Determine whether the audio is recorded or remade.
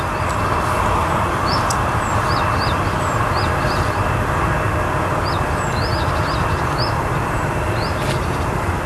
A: recorded